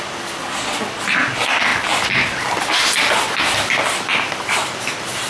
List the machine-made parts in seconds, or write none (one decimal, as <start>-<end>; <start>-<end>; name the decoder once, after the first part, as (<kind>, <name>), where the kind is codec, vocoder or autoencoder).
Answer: 0.0-1.7 (vocoder, BigVGAN v2); 3.4-5.3